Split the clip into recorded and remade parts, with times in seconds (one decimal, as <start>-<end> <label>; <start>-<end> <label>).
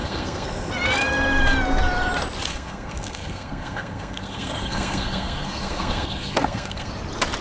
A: 0.0-0.7 remade; 0.7-2.5 recorded; 2.5-6.9 remade; 6.9-7.4 recorded